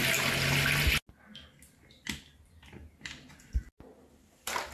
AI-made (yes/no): no